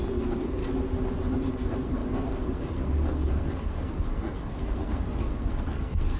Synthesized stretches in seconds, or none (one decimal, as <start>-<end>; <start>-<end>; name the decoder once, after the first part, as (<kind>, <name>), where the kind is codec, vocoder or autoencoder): 0.0-0.6 (codec, SNAC); 1.5-6.2